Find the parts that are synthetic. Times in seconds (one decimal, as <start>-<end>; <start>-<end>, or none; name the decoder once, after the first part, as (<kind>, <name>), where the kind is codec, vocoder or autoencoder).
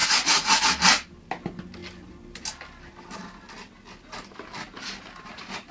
0.0-0.6 (vocoder, Vocos)